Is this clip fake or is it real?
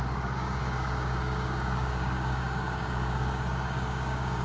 fake